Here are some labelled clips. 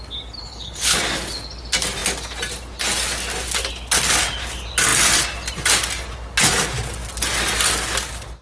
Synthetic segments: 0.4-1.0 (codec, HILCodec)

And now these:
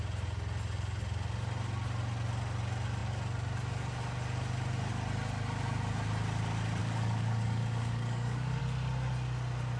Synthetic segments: 6.8-8.6 (codec, DAC)

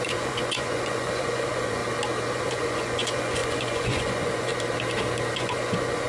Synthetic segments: 0.0-1.8 (vocoder, Vocos); 2.3-4.5; 5.3-6.1

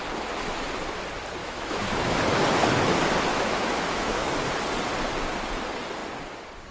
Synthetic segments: 1.4-2.2 (autoencoder, DAC-VAE); 3.3-4.3